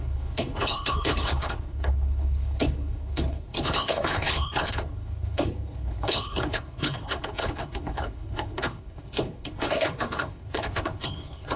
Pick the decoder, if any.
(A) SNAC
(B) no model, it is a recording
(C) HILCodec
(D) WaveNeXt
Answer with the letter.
C